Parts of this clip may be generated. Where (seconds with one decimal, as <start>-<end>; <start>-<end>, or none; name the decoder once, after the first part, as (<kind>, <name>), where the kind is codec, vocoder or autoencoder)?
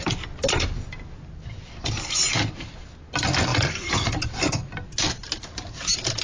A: none